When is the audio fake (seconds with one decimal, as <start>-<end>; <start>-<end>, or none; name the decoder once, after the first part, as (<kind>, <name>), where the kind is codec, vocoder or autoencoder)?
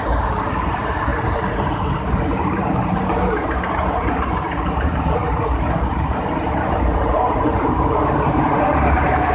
0.0-9.3 (vocoder, BigVGAN v2)